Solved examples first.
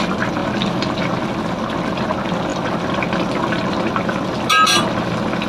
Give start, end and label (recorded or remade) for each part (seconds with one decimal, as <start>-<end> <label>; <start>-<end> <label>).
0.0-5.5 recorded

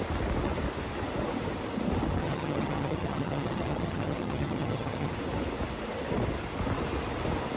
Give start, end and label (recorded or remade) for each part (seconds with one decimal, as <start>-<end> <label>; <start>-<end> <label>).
0.0-2.2 recorded; 2.2-5.1 remade; 5.1-7.6 recorded

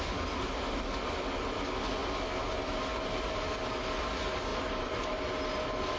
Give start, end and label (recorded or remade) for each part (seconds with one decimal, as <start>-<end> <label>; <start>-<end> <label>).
0.0-4.5 recorded; 4.5-5.2 remade; 5.2-6.0 recorded

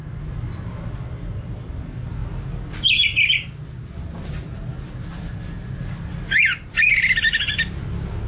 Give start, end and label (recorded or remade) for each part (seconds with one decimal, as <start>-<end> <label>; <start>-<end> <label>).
0.0-8.3 recorded

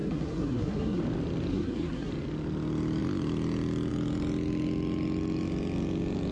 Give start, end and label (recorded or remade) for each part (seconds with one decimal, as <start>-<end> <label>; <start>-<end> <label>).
0.0-1.0 remade; 1.0-1.5 recorded; 1.5-2.1 remade; 2.1-6.3 recorded